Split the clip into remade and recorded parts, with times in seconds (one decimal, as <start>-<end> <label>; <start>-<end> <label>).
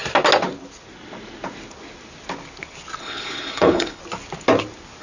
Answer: 0.0-3.0 recorded; 3.0-4.0 remade; 4.0-5.0 recorded